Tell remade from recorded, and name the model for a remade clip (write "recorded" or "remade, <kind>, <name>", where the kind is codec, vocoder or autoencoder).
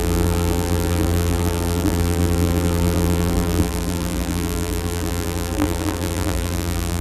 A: remade, vocoder, BigVGAN v2